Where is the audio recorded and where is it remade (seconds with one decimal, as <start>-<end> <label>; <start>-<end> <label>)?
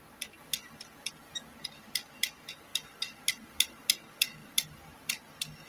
0.0-2.7 recorded; 2.7-3.8 remade; 3.8-4.4 recorded; 4.4-5.3 remade; 5.3-5.7 recorded